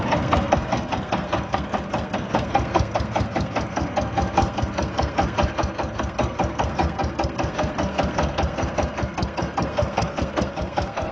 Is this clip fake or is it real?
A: fake